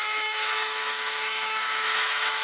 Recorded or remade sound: remade